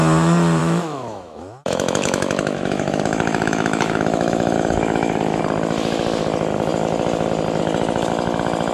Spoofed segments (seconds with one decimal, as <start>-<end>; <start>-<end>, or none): 0.6-5.4